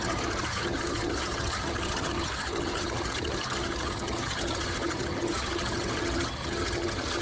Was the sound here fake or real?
fake